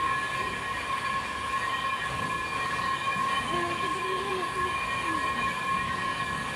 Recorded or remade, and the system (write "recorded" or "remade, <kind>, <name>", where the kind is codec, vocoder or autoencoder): remade, codec, DAC